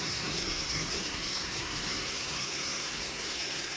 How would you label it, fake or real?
fake